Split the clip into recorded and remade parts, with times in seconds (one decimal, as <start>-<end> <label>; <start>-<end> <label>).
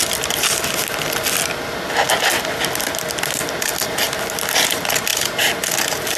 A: 0.0-6.2 recorded